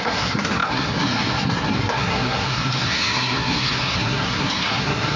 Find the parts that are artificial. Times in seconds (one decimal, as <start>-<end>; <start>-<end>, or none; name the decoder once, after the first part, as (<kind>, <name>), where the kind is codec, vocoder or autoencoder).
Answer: 0.0-5.2 (codec, SNAC)